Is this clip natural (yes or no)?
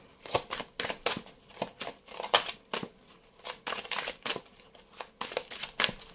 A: yes